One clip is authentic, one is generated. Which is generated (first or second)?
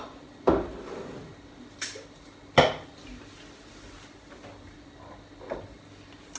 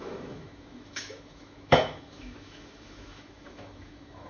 second